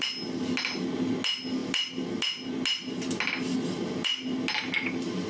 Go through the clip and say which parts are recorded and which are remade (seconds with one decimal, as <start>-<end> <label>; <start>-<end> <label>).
0.0-5.3 recorded